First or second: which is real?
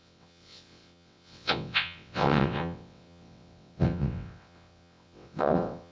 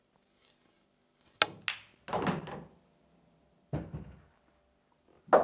second